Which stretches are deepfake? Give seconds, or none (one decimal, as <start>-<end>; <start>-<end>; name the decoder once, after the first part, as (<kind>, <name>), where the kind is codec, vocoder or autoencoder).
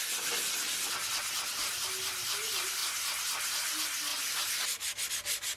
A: none